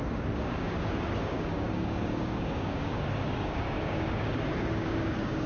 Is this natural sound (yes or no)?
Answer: no